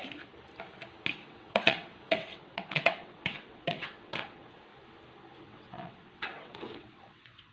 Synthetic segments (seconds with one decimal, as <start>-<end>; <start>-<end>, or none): 1.1-4.7; 5.4-7.5